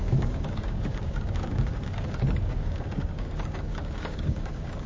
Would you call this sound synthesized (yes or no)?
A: yes